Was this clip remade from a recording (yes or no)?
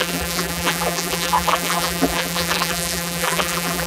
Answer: yes